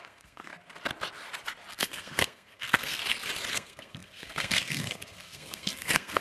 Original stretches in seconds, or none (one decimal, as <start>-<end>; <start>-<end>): 0.5-1.7; 3.0-3.5